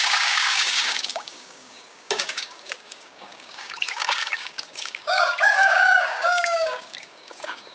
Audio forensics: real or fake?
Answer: fake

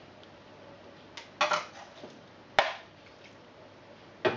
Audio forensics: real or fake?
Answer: real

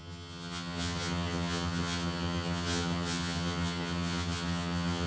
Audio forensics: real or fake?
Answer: fake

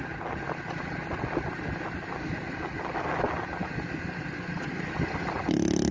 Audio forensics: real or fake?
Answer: real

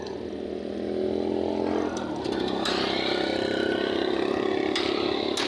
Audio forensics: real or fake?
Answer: real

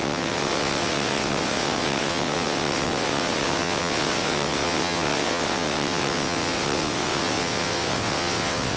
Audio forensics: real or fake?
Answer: fake